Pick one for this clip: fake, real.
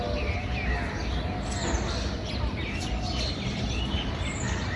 real